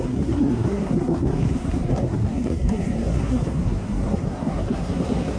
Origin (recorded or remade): remade